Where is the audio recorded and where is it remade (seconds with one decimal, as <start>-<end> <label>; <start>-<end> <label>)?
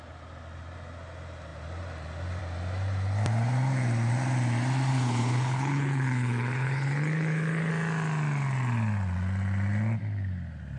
0.0-4.9 recorded; 4.9-7.7 remade; 7.7-10.8 recorded